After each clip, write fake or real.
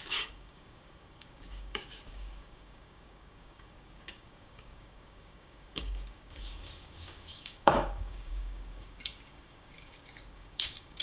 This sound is fake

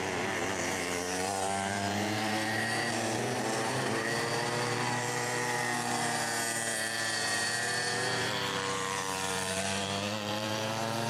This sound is fake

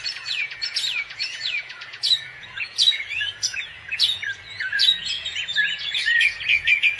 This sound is fake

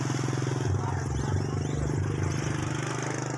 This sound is real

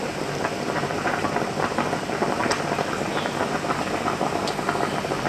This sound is real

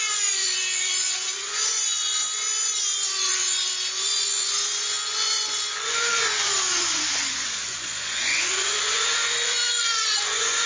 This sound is fake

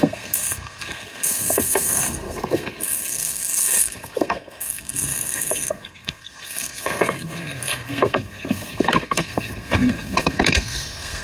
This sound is fake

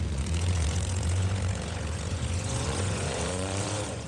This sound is fake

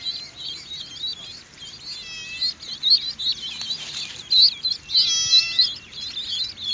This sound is real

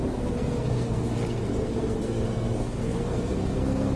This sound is fake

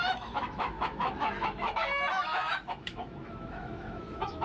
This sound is fake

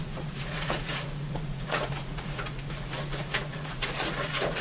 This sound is fake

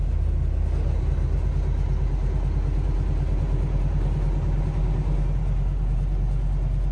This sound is real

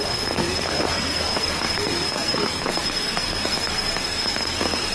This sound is fake